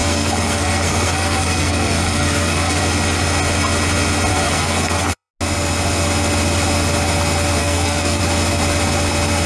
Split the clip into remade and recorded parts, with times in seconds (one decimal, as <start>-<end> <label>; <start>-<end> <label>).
0.0-2.8 remade; 2.8-4.3 recorded; 4.3-5.3 remade; 5.3-7.6 recorded; 7.6-8.2 remade; 8.2-9.5 recorded